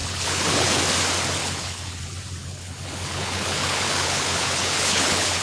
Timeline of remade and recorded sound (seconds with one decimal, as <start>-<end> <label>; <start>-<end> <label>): 0.0-0.8 remade; 0.8-1.4 recorded; 1.4-2.0 remade; 2.0-2.4 recorded; 2.4-5.4 remade